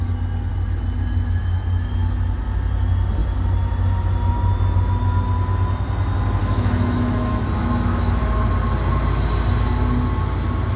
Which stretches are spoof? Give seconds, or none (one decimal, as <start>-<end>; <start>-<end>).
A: 6.4-8.2